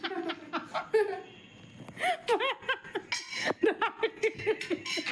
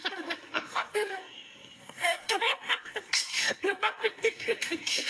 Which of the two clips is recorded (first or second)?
first